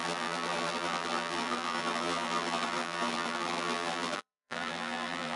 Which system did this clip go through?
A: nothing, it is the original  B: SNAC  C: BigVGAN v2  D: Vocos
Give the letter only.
C